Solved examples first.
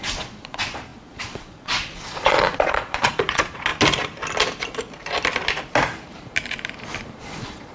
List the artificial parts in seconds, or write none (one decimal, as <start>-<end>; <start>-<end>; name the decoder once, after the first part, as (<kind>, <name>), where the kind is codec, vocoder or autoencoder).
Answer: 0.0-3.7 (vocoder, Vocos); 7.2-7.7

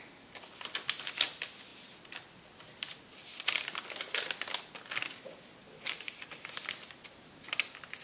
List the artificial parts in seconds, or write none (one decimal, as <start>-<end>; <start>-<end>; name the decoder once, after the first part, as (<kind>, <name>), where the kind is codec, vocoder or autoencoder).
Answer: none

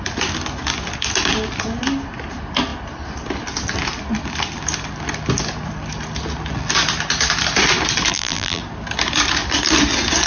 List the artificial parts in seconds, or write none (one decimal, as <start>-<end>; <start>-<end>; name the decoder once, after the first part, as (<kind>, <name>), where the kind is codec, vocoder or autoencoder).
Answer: 8.1-8.6 (vocoder, BigVGAN v2)

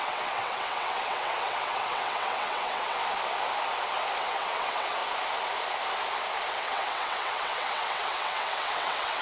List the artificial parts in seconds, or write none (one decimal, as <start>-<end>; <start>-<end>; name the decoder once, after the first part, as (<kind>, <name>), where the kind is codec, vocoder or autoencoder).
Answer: 0.0-3.0 (vocoder, WaveNeXt); 4.2-5.0; 6.5-9.2

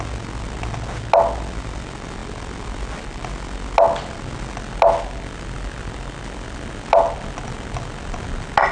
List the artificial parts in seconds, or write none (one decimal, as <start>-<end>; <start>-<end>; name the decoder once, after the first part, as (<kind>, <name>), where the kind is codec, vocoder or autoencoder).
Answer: none

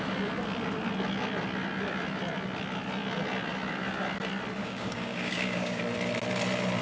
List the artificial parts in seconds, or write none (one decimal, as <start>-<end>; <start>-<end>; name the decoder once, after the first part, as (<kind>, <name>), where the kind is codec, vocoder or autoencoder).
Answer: 4.6-5.8 (codec, DAC)

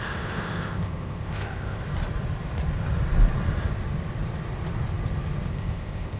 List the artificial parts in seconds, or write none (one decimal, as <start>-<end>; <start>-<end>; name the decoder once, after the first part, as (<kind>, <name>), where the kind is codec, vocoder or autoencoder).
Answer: 0.0-1.8 (codec, ZipCodec); 5.5-6.2

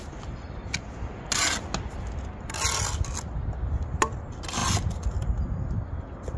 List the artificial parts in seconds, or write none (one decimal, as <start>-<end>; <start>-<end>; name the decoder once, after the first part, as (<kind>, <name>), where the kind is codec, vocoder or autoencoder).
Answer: none